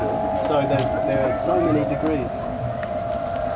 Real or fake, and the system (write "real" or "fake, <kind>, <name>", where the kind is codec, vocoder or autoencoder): real